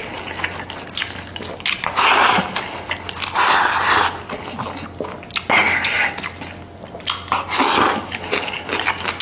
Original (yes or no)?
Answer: yes